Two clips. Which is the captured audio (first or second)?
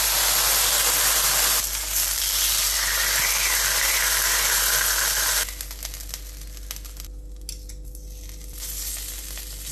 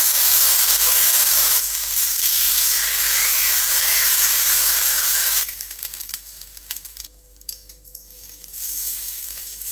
first